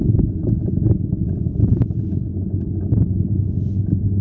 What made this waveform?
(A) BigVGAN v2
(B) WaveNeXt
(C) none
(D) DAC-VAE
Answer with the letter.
C